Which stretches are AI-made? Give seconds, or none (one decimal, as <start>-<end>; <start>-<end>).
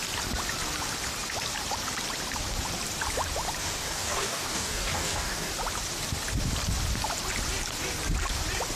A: 3.6-5.5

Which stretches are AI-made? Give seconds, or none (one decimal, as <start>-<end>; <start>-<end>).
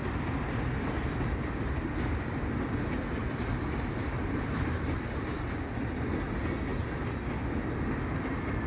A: none